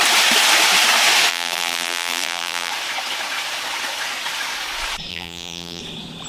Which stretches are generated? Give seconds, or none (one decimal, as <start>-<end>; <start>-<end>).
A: 1.3-2.7; 5.1-5.8